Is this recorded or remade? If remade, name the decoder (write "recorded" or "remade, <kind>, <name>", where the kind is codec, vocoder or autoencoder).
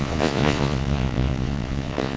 remade, vocoder, Vocos